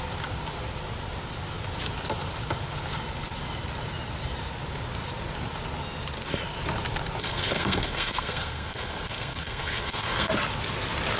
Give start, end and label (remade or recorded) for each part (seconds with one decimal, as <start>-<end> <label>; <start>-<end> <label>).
0.0-7.2 recorded; 7.2-10.3 remade; 10.3-11.2 recorded